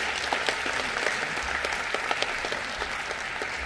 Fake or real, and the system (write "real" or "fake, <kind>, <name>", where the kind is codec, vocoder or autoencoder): real